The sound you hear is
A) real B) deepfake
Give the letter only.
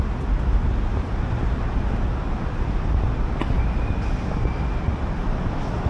A